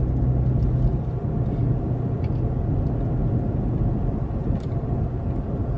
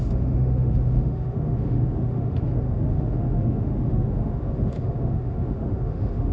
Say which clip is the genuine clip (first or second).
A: first